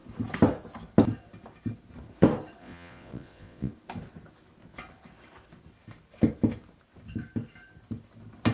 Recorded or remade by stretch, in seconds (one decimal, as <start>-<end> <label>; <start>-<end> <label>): 0.0-2.6 recorded; 2.6-3.7 remade; 3.7-8.5 recorded